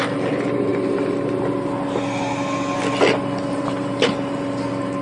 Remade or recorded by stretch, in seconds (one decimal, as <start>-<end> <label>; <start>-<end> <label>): 0.0-5.0 recorded